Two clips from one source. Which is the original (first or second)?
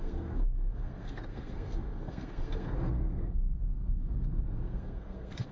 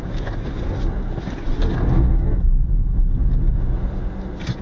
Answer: second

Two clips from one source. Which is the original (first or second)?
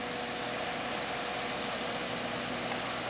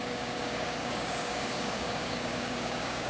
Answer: first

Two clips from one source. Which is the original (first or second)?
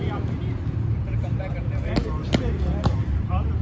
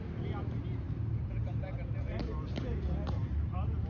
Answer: second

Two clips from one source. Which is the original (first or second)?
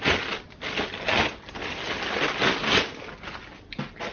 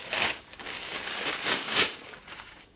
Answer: first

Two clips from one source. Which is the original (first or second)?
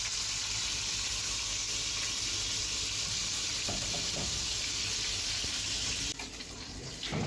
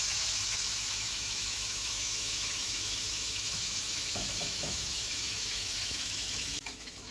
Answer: first